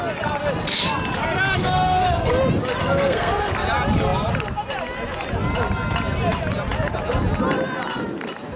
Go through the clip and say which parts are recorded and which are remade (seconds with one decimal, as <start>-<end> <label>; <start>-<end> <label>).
0.0-1.6 recorded; 1.6-2.4 remade; 2.4-2.8 recorded; 2.8-3.5 remade; 3.5-8.6 recorded